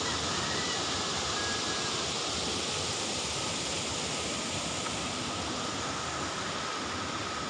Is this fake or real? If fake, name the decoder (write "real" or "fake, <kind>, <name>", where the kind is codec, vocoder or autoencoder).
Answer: real